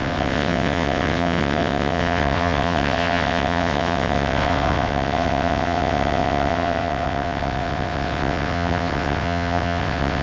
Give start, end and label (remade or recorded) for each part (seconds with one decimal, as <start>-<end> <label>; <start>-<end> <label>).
0.0-10.2 remade